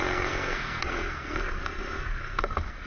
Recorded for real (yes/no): no